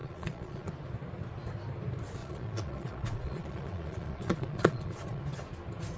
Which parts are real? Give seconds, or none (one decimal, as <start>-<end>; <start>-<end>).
0.7-2.2; 5.2-6.0